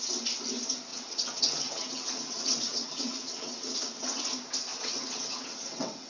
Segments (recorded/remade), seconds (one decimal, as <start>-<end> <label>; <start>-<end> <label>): 0.0-0.9 recorded; 0.9-4.2 remade; 4.2-4.7 recorded; 4.7-6.1 remade